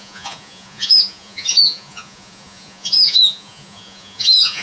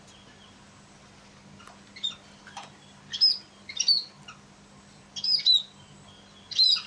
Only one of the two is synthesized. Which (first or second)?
first